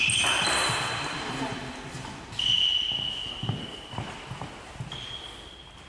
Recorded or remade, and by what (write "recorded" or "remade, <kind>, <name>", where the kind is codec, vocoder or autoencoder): recorded